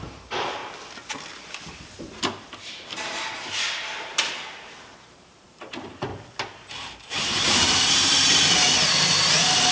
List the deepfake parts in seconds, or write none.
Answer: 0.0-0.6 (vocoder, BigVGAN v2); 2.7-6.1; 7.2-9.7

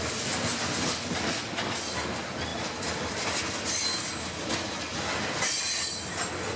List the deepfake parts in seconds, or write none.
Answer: none

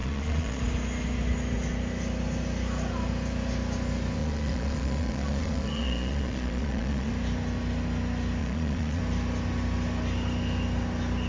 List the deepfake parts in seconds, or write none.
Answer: 0.0-0.6 (vocoder, Vocos); 4.2-7.1; 8.4-9.0

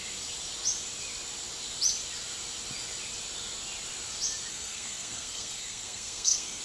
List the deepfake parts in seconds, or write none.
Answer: 4.5-6.6 (codec, SNAC)

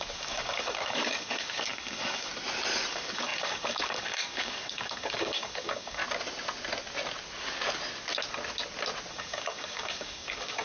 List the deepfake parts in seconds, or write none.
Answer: 0.0-2.3 (codec, DAC); 2.9-6.0; 9.1-10.6